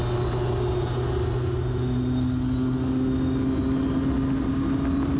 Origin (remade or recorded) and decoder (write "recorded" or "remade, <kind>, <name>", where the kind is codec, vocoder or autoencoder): recorded